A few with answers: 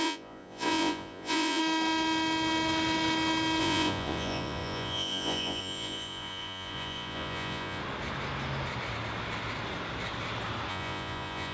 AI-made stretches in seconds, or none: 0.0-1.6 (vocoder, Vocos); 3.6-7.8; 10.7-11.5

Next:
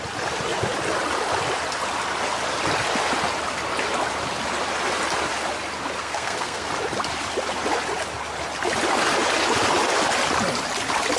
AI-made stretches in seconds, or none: 6.0-6.7 (codec, SNAC)

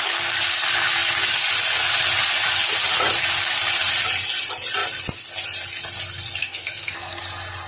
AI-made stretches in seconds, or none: 6.4-7.2 (codec, SNAC)